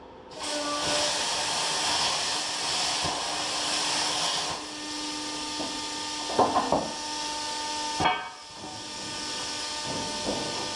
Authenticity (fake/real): real